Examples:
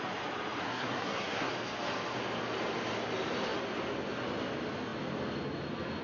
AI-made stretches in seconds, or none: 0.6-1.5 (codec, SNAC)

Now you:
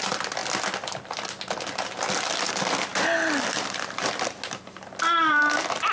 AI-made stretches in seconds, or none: none

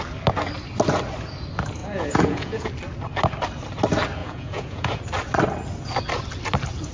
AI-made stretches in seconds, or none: 1.8-2.7 (vocoder, Vocos); 4.2-5.0

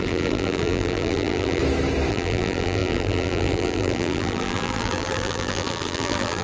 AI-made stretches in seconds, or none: 0.0-1.6 (vocoder, BigVGAN v2); 2.1-6.4

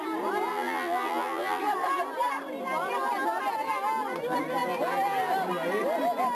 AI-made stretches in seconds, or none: 0.5-1.6 (vocoder, BigVGAN v2)

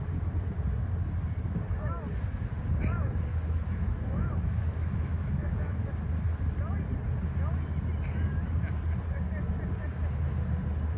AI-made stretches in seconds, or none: 3.3-5.9 (autoencoder, DAC-VAE)

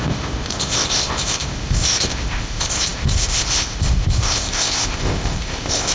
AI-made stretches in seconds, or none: 0.0-5.9 (codec, ZipCodec)

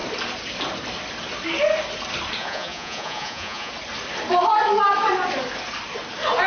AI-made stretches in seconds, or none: 2.4-3.7 (vocoder, Vocos)